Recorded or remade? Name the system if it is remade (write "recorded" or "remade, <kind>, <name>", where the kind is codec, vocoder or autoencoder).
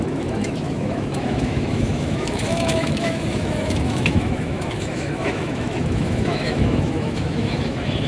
remade, autoencoder, DAC-VAE